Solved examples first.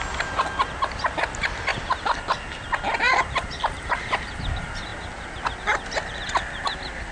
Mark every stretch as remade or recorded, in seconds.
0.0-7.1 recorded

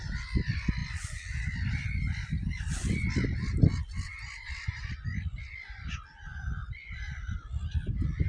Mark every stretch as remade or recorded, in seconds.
0.0-8.3 recorded

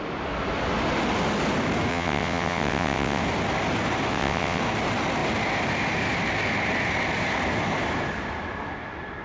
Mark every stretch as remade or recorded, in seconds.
0.0-1.9 recorded; 1.9-3.2 remade; 3.2-4.1 recorded; 4.1-4.6 remade; 4.6-9.2 recorded

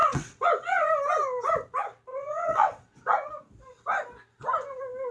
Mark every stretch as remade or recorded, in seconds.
0.0-0.9 remade; 0.9-2.1 recorded; 2.1-3.3 remade; 3.3-5.1 recorded

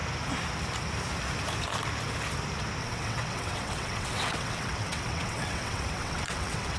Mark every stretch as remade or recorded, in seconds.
0.0-2.8 recorded; 2.8-6.8 remade

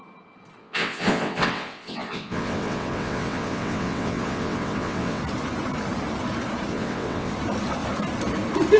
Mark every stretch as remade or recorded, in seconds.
0.0-0.6 recorded; 0.6-5.2 remade; 5.2-6.7 recorded; 6.7-7.3 remade; 7.3-8.8 recorded